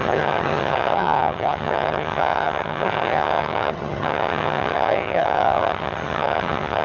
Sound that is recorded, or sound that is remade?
remade